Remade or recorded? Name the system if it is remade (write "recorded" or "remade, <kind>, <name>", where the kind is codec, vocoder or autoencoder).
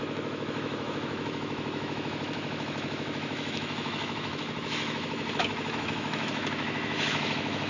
remade, autoencoder, DAC-VAE